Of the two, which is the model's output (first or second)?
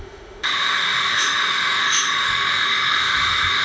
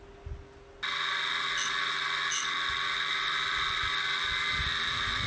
first